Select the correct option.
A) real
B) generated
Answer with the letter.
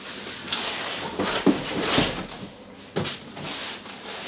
A